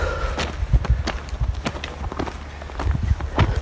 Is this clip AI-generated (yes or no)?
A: no